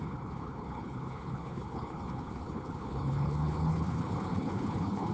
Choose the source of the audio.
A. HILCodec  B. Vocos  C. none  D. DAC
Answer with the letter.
A